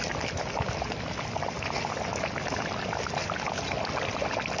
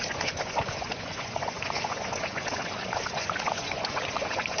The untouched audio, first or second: first